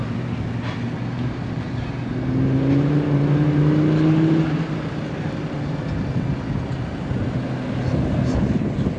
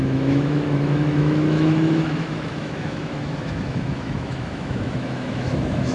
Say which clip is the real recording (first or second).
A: first